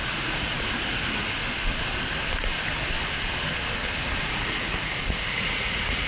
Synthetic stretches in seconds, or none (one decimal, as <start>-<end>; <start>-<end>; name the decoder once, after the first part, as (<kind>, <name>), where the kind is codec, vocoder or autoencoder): 0.0-1.4 (vocoder, Vocos); 4.2-6.1